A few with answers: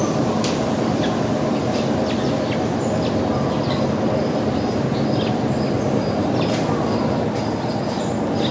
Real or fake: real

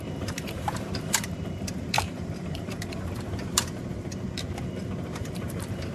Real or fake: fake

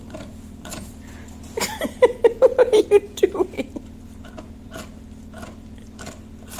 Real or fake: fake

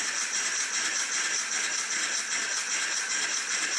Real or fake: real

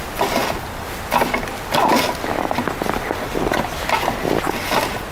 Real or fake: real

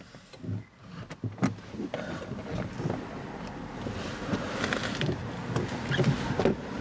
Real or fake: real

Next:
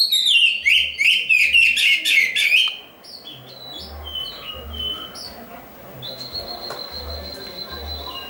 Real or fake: real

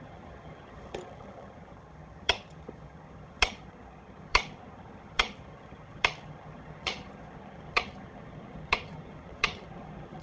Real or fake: fake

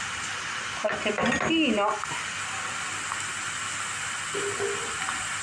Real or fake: real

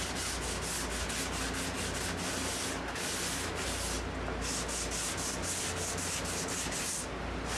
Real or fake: real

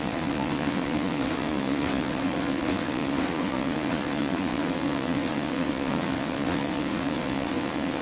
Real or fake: fake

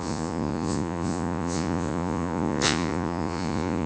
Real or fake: fake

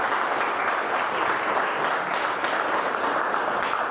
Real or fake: real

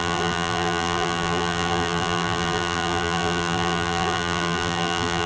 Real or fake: fake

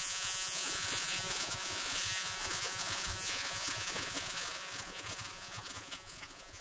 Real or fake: fake